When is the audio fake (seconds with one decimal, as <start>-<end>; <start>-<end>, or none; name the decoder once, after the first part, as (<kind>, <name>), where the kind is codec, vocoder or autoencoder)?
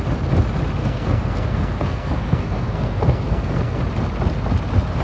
0.8-3.8 (codec, SNAC)